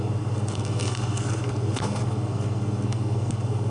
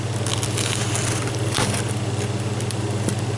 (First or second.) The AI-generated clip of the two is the first